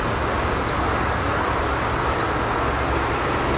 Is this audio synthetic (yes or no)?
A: no